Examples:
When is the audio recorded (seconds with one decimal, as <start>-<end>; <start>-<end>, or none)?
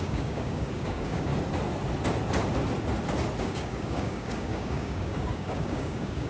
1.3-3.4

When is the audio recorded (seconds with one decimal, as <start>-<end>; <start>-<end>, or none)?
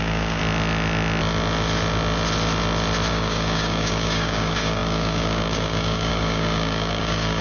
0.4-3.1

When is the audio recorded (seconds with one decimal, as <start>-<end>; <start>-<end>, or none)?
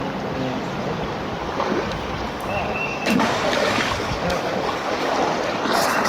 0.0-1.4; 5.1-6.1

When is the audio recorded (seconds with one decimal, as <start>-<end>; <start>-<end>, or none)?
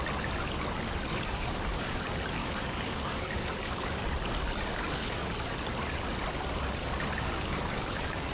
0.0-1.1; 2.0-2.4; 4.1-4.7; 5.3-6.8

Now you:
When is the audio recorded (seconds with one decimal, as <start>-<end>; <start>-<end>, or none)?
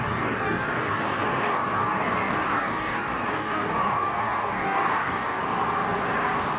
5.4-6.6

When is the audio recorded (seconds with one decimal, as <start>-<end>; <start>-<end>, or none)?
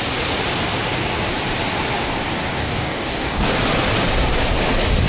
0.0-2.6; 3.5-5.1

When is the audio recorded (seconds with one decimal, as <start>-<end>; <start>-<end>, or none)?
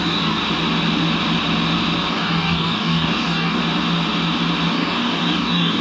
0.4-2.1; 3.6-4.7